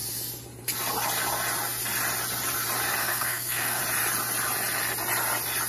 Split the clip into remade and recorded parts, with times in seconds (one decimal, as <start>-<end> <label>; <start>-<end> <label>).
0.0-3.0 recorded; 3.0-3.8 remade; 3.8-5.7 recorded